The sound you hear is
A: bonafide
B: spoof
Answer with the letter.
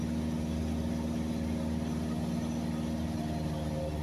A